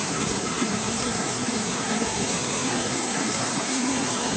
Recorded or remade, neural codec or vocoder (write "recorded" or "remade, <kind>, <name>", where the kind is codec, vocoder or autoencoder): remade, codec, SNAC